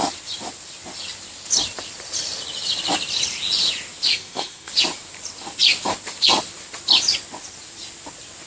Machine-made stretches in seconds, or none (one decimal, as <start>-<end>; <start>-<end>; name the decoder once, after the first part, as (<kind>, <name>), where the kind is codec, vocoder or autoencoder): 4.1-4.7 (codec, SNAC)